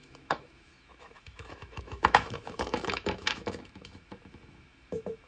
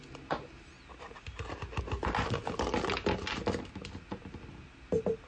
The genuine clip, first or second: second